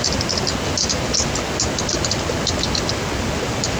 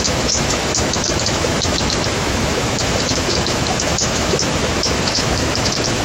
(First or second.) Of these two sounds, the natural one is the first